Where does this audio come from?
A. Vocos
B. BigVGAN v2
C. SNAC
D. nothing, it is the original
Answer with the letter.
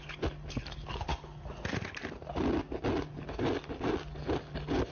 D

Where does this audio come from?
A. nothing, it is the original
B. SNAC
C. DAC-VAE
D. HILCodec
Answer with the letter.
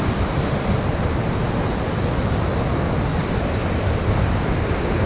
A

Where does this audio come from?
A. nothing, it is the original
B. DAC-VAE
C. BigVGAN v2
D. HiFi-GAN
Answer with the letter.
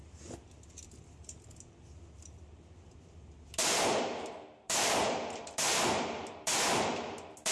C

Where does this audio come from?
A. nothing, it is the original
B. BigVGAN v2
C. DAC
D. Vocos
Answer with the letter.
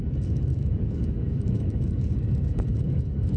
C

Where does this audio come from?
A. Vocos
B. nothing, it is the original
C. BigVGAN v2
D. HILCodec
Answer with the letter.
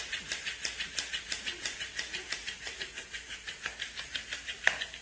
B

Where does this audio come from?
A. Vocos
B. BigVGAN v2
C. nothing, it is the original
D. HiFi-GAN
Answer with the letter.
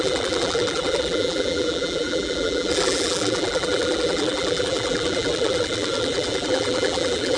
B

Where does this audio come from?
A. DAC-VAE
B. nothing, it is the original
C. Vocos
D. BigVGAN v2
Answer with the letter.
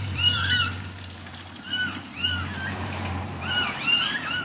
D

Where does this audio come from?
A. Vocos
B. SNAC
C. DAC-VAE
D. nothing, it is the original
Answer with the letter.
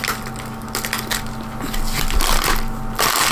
D